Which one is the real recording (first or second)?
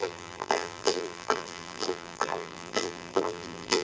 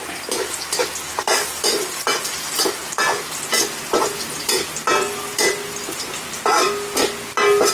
second